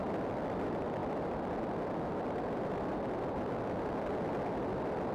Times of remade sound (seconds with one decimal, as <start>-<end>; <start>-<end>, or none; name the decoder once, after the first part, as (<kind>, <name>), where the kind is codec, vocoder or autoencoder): 1.0-3.3 (vocoder, BigVGAN v2)